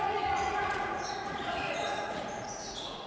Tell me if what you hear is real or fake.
fake